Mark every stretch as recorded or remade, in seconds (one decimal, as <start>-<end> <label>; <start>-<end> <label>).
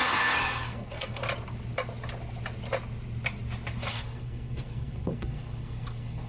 0.0-1.2 remade; 1.2-3.9 recorded; 3.9-6.3 remade